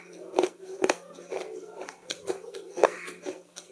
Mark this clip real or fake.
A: fake